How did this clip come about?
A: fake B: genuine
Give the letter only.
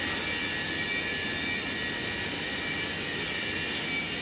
B